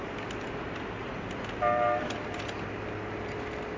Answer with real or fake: real